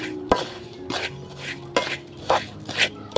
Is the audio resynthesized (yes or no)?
no